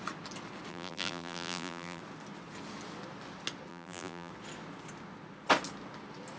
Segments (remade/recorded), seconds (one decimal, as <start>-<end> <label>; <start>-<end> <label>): 0.0-0.7 recorded; 0.7-2.0 remade; 2.0-3.7 recorded; 3.7-4.3 remade; 4.3-6.4 recorded